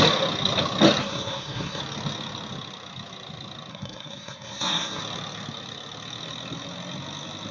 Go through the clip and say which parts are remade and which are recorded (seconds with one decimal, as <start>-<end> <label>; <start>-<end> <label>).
0.0-1.0 recorded; 1.0-1.8 remade; 1.8-3.7 recorded; 3.7-5.0 remade; 5.0-7.5 recorded